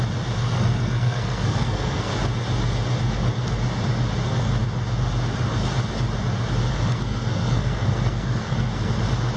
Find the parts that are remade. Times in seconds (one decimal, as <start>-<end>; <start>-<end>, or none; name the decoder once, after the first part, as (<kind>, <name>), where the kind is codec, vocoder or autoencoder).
0.4-2.1 (codec, SNAC); 6.7-9.0